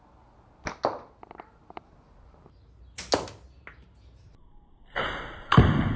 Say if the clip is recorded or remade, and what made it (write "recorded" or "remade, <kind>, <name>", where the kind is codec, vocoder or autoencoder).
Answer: recorded